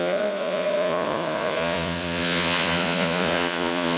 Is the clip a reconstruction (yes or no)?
yes